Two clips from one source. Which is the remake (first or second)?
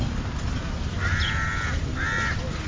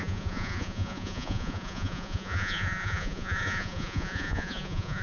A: second